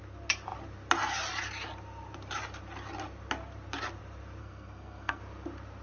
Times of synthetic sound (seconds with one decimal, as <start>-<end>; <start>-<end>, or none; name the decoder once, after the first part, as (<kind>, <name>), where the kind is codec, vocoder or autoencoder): 4.4-5.2 (codec, SNAC)